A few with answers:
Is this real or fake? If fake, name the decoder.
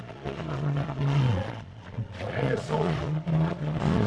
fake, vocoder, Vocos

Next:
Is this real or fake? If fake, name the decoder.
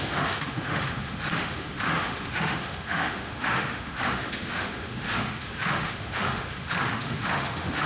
fake, autoencoder, DAC-VAE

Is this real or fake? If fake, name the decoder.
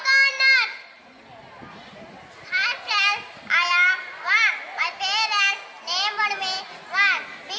real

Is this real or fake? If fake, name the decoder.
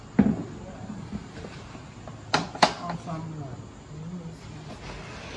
real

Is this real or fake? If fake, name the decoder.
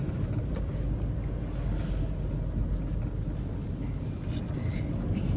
real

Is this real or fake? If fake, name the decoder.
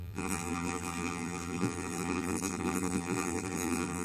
fake, vocoder, BigVGAN v2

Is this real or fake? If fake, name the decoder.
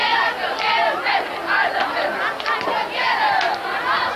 real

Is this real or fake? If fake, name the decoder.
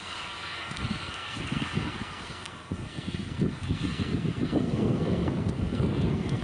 fake, codec, SNAC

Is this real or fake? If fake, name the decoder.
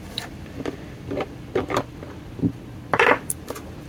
fake, vocoder, BigVGAN v2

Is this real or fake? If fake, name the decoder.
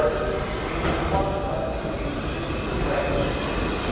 real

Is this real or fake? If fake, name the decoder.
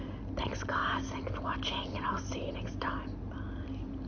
real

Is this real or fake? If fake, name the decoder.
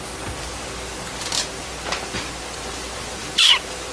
real